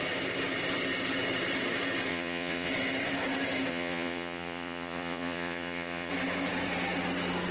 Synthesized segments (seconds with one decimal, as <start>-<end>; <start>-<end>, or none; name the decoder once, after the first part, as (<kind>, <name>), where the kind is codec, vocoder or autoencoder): 2.1-2.7 (vocoder, Vocos); 3.7-6.1